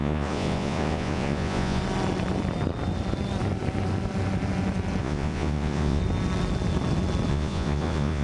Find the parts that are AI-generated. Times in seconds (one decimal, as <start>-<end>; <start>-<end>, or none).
0.0-1.8; 5.0-6.0; 7.3-8.2